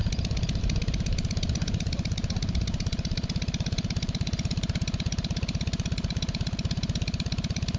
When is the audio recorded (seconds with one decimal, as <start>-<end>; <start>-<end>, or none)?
0.0-0.6